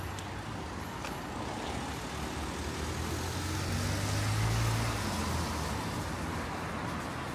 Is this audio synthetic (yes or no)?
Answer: no